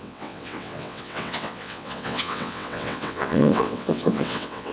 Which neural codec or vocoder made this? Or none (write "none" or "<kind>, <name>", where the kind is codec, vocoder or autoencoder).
vocoder, WaveNeXt